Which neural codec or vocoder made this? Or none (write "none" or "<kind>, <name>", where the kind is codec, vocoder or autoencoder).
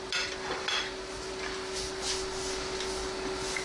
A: none